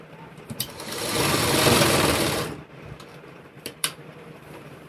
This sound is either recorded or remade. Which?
remade